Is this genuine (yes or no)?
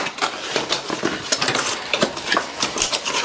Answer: yes